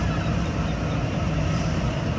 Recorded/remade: recorded